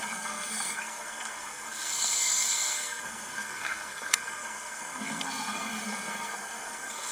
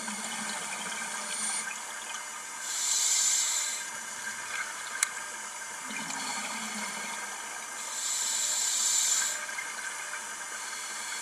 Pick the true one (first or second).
second